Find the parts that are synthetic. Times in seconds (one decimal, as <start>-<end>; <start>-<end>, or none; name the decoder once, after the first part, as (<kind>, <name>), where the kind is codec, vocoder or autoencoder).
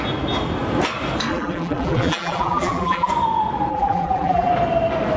1.3-3.1 (vocoder, BigVGAN v2); 3.7-4.5